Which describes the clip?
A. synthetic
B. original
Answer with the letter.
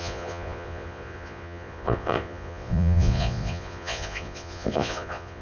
A